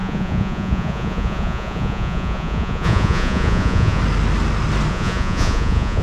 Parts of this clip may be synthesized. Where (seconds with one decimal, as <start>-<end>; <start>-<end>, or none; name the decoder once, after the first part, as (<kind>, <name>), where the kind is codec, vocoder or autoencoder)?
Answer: 0.0-4.0 (vocoder, Vocos); 4.9-6.0